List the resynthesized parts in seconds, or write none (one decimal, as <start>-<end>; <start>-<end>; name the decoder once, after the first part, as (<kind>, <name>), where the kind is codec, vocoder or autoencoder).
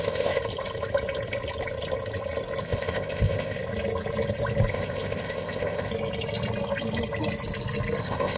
0.0-0.4 (codec, ZipCodec); 2.6-3.6; 4.7-5.9; 8.0-8.4